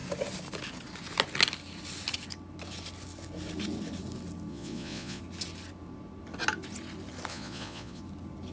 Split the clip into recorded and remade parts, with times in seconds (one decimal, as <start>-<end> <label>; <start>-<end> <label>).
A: 0.0-4.5 recorded; 4.5-5.2 remade; 5.2-7.3 recorded; 7.3-8.0 remade; 8.0-8.5 recorded